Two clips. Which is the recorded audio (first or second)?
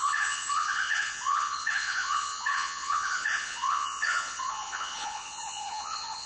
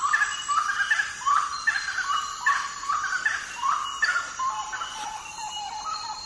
second